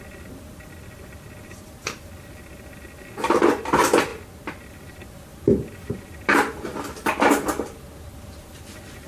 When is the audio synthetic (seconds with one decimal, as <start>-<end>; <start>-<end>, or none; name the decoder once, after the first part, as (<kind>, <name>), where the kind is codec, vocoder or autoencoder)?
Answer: 4.1-4.7 (vocoder, BigVGAN v2); 5.3-6.6